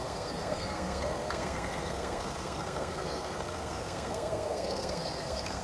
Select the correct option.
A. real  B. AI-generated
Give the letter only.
B